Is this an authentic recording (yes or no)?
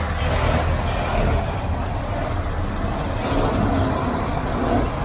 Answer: yes